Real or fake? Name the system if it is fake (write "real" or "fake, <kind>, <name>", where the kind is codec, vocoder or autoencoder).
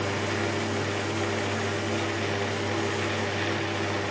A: real